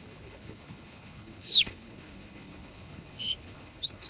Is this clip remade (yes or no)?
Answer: yes